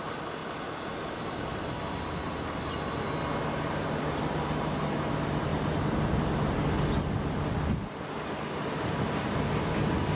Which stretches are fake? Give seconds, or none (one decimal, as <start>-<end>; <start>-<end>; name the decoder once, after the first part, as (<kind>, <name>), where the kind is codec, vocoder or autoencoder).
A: none